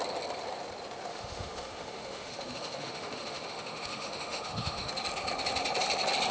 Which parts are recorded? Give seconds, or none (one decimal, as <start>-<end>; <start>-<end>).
0.0-1.1; 4.9-6.3